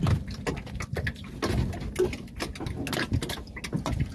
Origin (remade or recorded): recorded